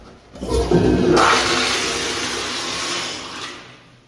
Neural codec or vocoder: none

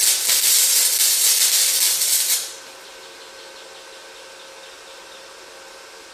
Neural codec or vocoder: none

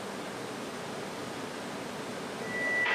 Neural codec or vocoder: none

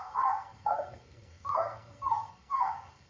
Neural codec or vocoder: codec, SNAC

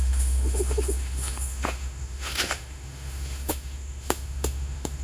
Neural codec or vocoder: autoencoder, DAC-VAE